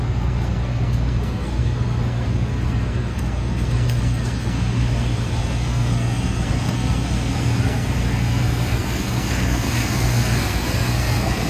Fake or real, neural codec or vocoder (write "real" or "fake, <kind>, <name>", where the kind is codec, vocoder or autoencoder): fake, codec, SNAC